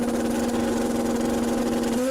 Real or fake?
real